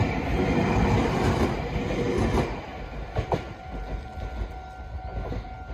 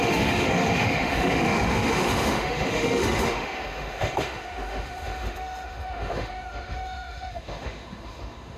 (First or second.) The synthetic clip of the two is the second